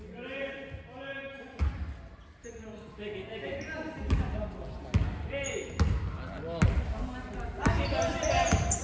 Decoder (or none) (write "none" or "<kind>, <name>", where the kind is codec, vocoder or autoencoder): none